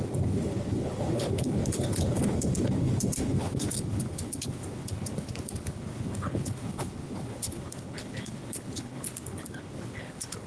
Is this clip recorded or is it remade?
remade